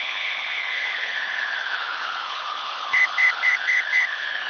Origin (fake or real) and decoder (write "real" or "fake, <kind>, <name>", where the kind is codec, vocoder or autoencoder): fake, codec, HILCodec